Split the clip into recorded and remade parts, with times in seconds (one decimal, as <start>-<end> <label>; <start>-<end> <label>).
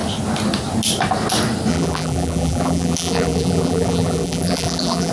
0.0-1.7 recorded; 1.7-5.1 remade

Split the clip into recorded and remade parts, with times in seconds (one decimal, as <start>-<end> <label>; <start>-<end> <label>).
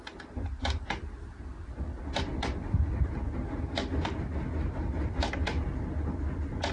0.0-6.7 recorded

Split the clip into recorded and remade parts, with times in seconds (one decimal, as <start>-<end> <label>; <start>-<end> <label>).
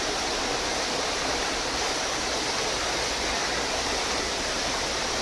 0.0-0.7 recorded; 0.7-2.0 remade; 2.0-3.4 recorded; 3.4-5.2 remade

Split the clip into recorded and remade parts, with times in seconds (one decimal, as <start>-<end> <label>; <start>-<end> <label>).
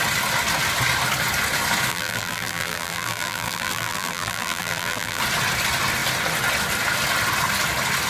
0.0-1.9 recorded; 1.9-5.2 remade; 5.2-8.1 recorded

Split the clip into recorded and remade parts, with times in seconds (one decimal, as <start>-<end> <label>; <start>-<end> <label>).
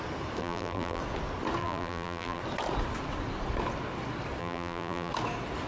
0.0-0.4 recorded; 0.4-1.0 remade; 1.0-1.6 recorded; 1.6-2.4 remade; 2.4-4.4 recorded; 4.4-5.1 remade; 5.1-5.7 recorded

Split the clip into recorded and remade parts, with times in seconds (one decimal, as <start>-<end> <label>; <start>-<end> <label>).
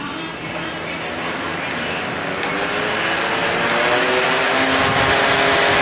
0.0-5.8 recorded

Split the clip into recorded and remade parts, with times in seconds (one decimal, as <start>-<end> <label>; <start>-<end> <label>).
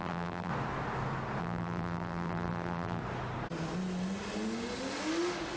0.0-0.5 remade; 0.5-1.4 recorded; 1.4-3.0 remade; 3.0-5.6 recorded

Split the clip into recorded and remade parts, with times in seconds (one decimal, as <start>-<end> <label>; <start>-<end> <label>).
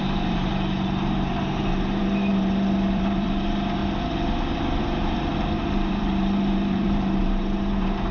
0.0-0.5 remade; 0.5-1.3 recorded; 1.3-3.8 remade; 3.8-4.8 recorded; 4.8-5.3 remade; 5.3-5.9 recorded; 5.9-8.1 remade